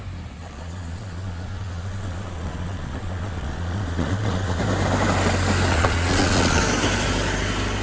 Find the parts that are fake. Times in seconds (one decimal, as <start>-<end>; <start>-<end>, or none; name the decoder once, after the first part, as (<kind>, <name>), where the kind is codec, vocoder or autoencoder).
0.4-4.6 (vocoder, Vocos); 5.7-6.6